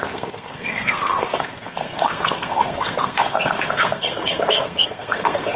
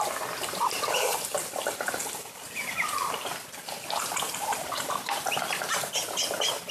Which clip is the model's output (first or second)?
first